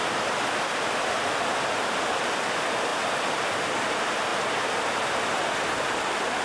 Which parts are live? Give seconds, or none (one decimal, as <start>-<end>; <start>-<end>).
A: 0.0-2.0